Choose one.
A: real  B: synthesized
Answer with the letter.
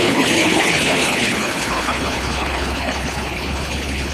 B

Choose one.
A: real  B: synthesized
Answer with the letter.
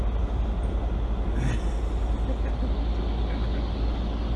A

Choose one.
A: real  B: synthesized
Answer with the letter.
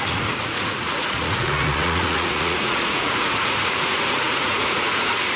B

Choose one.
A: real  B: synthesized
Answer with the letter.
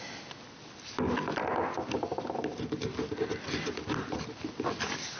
A